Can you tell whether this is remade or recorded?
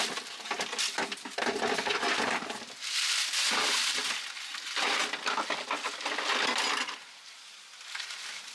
recorded